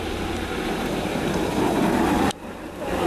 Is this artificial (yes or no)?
yes